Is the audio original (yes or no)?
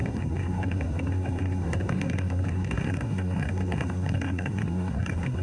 no